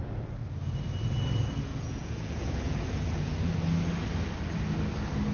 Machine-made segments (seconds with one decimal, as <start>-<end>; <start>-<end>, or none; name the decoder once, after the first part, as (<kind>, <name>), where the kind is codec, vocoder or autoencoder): 1.7-3.5 (vocoder, Vocos)